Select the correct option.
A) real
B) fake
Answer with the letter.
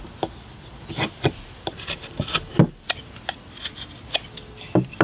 A